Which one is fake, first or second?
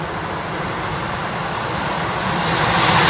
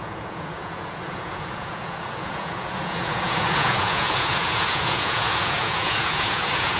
second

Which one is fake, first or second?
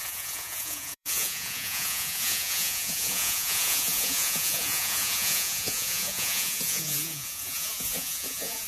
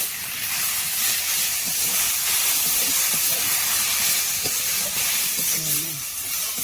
first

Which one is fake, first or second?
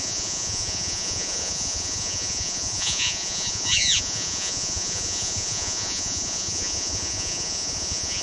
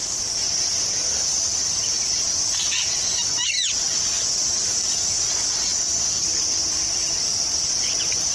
first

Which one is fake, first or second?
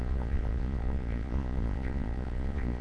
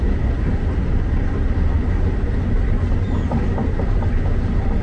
first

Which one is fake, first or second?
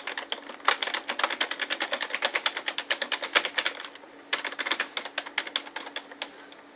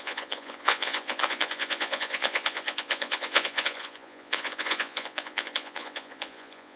second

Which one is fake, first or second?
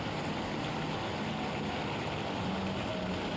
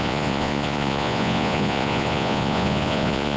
second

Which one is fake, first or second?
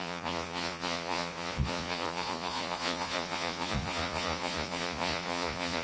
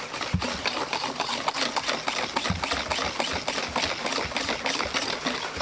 first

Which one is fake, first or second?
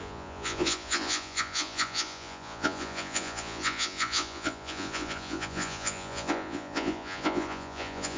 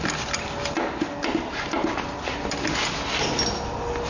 first